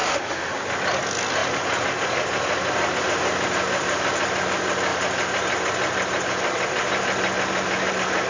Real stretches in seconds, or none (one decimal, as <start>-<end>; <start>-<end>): 0.5-8.3